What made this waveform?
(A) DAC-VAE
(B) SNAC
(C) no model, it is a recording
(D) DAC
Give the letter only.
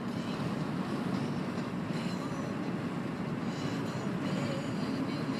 C